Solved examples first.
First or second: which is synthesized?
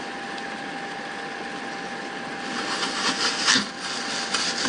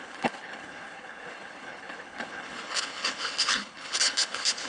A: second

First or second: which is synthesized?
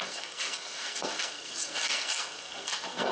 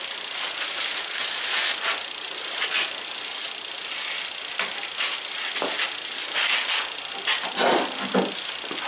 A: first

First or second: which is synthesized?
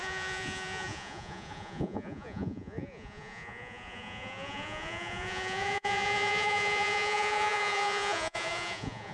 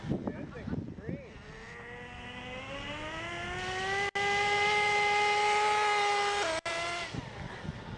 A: first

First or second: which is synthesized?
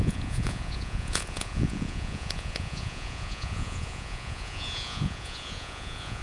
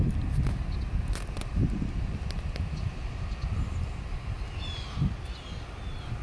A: first